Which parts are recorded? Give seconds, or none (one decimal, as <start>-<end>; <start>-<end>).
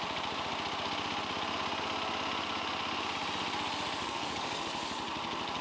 0.0-4.0; 4.6-5.6